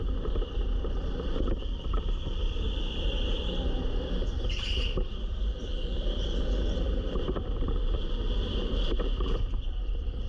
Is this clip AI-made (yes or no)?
yes